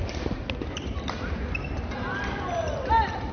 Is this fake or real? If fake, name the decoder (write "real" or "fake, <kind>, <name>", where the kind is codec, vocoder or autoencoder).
fake, vocoder, BigVGAN v2